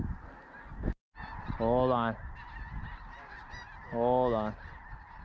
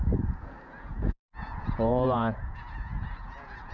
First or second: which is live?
first